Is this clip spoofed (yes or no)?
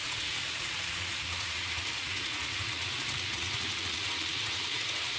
yes